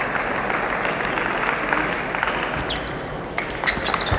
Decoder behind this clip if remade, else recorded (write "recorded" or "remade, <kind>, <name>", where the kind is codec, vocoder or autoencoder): recorded